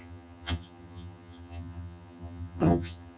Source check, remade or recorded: remade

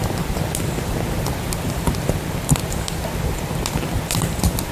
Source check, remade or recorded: recorded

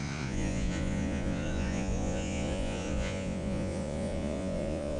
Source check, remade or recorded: remade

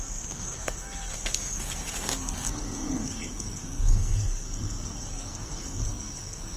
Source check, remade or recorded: remade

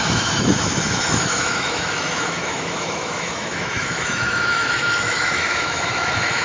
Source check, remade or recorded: remade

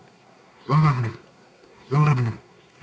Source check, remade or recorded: remade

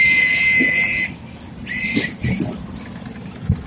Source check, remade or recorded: recorded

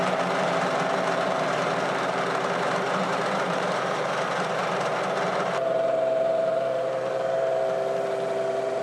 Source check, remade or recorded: remade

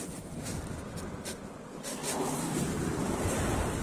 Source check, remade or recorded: recorded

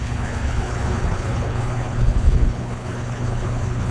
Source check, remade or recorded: remade